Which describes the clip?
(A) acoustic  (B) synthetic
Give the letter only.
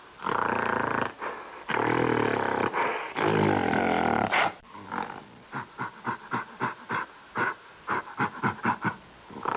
A